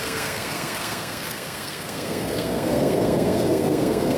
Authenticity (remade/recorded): remade